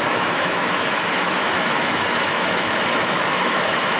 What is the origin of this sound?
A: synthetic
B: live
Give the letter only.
A